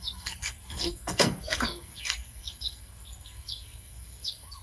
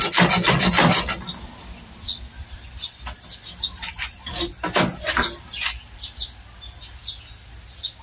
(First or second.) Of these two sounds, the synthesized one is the first